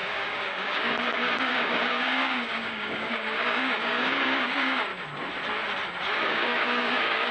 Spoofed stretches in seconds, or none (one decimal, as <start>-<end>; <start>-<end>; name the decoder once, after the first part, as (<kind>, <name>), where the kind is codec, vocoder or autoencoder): 0.0-4.9 (codec, DAC); 6.1-7.3